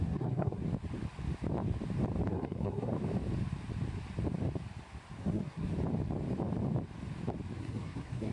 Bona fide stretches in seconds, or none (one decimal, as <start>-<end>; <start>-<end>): 0.6-2.3; 2.9-5.2; 5.7-7.6